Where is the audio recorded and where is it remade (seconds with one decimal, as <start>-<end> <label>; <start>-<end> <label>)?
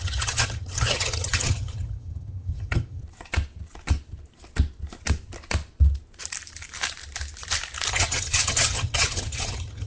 0.0-3.0 remade; 3.0-7.9 recorded; 7.9-9.9 remade